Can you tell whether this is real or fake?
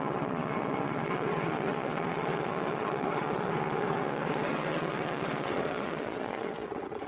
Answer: fake